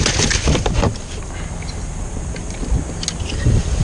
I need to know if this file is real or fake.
real